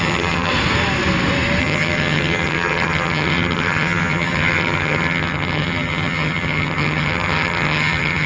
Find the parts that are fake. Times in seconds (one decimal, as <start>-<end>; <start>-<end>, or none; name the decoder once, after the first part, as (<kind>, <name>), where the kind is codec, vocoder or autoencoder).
0.0-0.5 (vocoder, HiFi-GAN); 1.6-8.3